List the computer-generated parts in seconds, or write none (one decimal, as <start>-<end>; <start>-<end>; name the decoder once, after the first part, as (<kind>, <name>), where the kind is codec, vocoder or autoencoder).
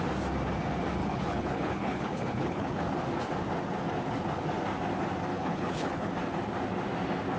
1.0-2.8 (codec, HILCodec); 5.3-6.1